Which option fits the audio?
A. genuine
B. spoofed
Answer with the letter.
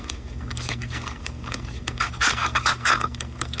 B